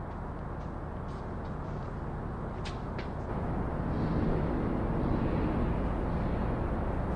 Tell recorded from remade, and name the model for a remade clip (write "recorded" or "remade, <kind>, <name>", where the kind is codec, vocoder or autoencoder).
recorded